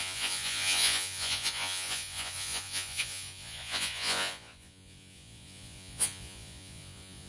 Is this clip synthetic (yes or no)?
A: yes